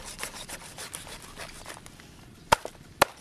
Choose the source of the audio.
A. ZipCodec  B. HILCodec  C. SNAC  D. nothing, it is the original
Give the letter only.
D